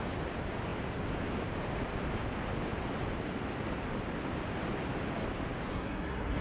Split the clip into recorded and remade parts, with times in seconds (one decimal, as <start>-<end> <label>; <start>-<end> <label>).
0.0-5.7 recorded; 5.7-6.4 remade